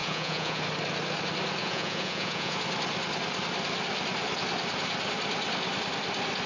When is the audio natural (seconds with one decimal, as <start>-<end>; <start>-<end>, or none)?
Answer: 0.6-1.6; 2.6-6.5